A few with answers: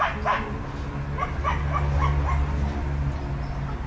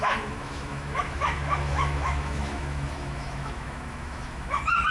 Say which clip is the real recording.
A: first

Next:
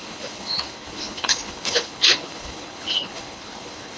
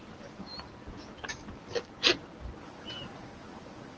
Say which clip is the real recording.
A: second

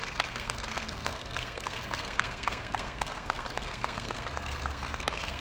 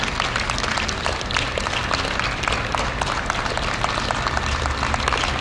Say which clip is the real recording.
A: second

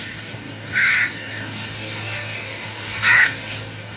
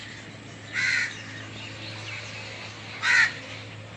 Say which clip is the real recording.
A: second